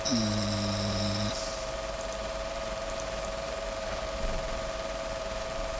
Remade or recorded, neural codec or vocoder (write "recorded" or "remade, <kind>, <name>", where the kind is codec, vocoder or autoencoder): remade, vocoder, BigVGAN v2